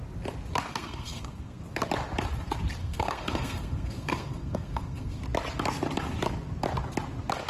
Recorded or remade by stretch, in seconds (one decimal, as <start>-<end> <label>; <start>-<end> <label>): 0.0-0.7 recorded; 0.7-1.6 remade; 1.6-2.8 recorded; 2.8-5.2 remade; 5.2-7.5 recorded